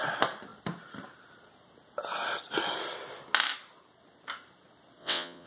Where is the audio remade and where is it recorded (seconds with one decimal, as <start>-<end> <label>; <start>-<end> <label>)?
0.0-5.0 recorded; 5.0-5.5 remade